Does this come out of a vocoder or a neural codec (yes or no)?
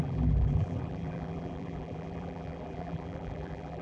yes